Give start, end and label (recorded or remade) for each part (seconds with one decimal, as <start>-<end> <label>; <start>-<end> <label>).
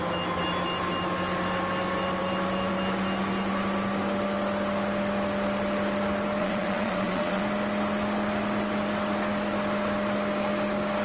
0.0-6.4 recorded; 6.4-7.4 remade; 7.4-11.0 recorded